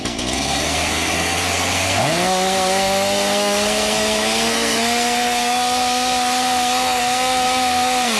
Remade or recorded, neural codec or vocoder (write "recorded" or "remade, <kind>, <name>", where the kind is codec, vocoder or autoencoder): remade, codec, SNAC